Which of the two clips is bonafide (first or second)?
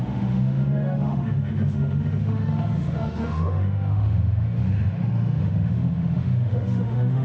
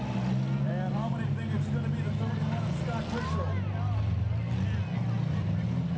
second